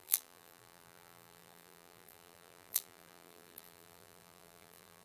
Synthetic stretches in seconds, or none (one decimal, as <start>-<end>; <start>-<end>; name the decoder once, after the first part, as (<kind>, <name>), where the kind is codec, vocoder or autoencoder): 0.0-5.0 (vocoder, BigVGAN v2)